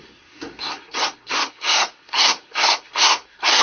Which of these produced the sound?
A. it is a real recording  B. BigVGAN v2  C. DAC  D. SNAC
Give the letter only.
D